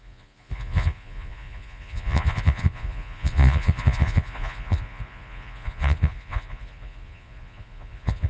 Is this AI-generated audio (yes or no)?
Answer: yes